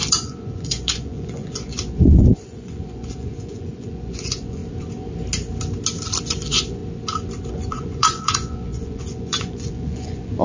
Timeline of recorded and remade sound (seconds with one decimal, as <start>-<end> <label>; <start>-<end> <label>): 0.0-4.6 remade; 4.6-6.2 recorded; 6.2-6.8 remade; 6.8-7.5 recorded; 7.5-10.4 remade